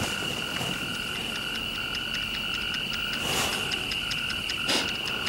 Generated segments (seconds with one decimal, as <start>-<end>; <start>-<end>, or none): 0.9-1.6; 3.5-4.8